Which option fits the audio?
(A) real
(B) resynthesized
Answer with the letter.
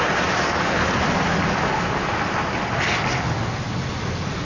B